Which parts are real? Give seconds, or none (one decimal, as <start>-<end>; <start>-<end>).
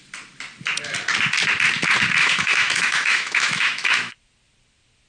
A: 0.0-2.2; 4.1-5.1